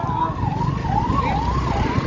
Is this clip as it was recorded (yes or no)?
yes